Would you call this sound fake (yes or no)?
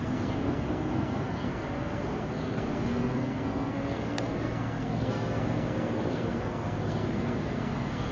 yes